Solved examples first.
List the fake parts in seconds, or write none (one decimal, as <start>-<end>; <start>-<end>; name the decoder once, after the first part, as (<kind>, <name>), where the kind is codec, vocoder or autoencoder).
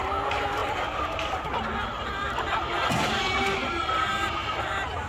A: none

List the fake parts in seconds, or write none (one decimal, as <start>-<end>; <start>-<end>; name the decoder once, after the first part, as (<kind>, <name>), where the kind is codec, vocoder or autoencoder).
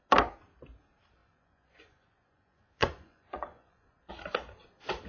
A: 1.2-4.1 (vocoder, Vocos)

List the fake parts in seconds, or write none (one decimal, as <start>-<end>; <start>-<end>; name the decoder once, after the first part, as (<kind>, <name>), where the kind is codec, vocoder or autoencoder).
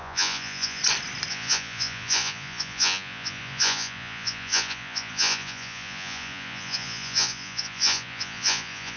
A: 0.0-0.8 (vocoder, Vocos); 1.3-9.0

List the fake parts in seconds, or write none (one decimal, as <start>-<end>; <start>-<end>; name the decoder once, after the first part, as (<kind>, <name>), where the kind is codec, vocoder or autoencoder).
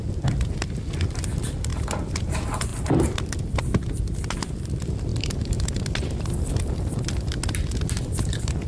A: 1.7-2.3 (vocoder, BigVGAN v2); 5.1-5.8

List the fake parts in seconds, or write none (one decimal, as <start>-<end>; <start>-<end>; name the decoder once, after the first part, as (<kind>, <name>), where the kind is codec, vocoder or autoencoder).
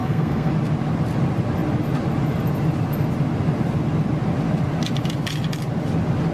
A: 0.0-0.5 (codec, SNAC)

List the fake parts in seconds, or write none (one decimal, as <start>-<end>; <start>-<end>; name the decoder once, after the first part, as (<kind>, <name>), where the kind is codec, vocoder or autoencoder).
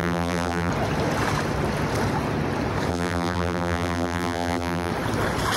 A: 0.0-0.7 (vocoder, BigVGAN v2); 2.9-4.9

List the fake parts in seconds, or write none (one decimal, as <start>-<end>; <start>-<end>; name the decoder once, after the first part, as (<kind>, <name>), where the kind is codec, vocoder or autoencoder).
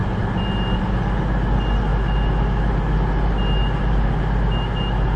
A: none